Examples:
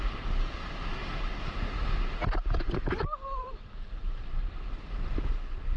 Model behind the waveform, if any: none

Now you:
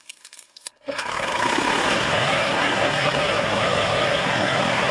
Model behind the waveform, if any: codec, SNAC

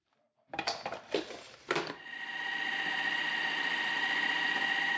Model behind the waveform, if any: vocoder, BigVGAN v2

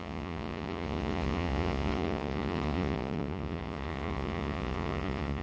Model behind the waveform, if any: vocoder, Vocos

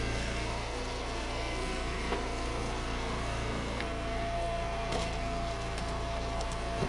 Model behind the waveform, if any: codec, SNAC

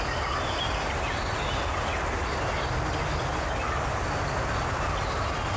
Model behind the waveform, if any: none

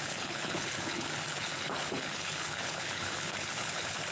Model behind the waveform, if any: codec, HILCodec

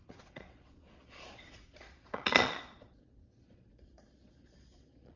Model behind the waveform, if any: vocoder, Vocos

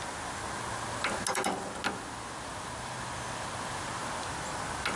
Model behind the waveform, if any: none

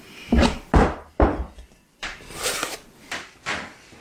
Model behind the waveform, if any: vocoder, BigVGAN v2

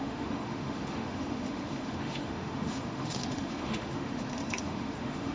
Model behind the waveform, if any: autoencoder, DAC-VAE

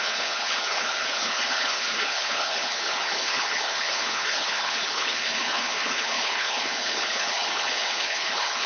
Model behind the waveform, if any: codec, HILCodec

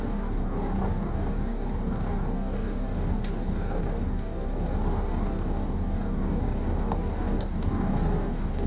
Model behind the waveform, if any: codec, DAC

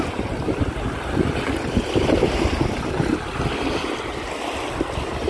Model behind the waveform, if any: none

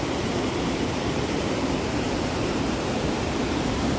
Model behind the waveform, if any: vocoder, BigVGAN v2